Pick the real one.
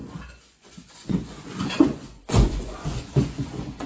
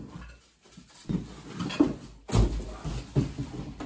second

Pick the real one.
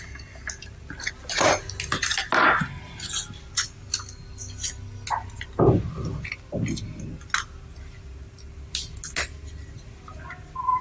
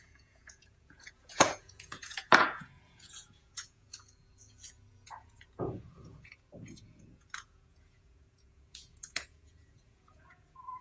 first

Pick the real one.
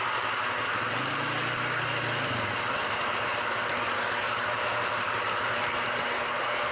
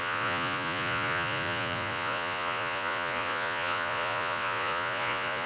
first